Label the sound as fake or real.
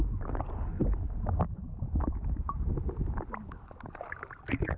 real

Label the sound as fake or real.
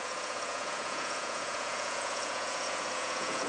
fake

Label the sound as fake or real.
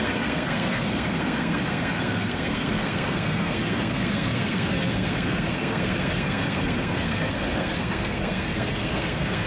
fake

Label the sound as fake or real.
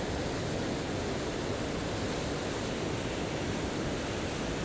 real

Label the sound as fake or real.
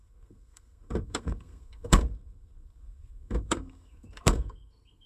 fake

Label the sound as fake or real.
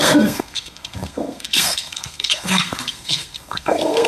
fake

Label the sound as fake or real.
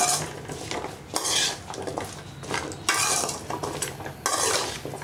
real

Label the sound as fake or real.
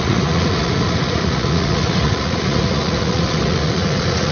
fake